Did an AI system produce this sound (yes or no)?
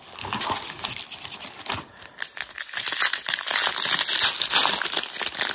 no